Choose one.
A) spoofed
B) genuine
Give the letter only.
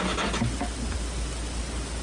B